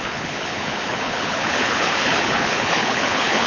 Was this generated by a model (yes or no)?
yes